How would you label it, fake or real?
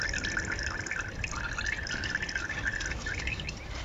real